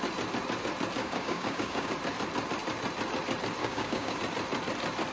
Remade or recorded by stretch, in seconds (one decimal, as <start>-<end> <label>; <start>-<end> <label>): 0.0-1.0 recorded; 1.0-1.9 remade; 1.9-3.6 recorded; 3.6-4.2 remade; 4.2-5.1 recorded

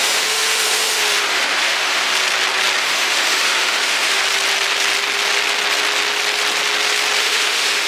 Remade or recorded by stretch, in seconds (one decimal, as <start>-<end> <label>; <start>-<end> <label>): 0.0-2.1 remade; 2.1-2.8 recorded; 2.8-4.2 remade; 4.2-7.2 recorded; 7.2-7.9 remade